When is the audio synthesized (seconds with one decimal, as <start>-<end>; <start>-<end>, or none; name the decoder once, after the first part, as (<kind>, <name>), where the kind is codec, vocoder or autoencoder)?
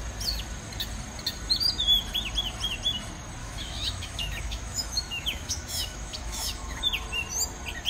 3.4-6.8 (autoencoder, DAC-VAE)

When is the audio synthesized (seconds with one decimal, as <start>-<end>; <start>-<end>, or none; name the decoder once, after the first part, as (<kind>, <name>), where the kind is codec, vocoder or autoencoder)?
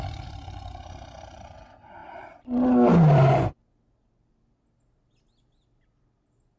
none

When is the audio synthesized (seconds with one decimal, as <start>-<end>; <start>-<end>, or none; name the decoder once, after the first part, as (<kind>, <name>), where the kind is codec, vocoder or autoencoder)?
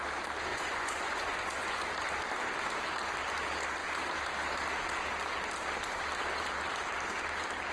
0.5-1.9 (vocoder, Vocos)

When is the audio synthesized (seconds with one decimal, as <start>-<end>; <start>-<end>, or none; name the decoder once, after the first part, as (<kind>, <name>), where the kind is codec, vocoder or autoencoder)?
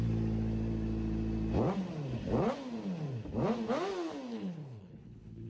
4.3-5.5 (codec, HILCodec)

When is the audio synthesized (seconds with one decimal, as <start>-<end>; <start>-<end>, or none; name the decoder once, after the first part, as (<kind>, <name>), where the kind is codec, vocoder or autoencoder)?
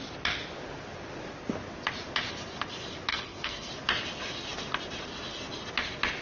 3.1-3.7 (codec, SNAC)